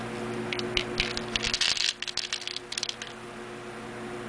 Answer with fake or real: real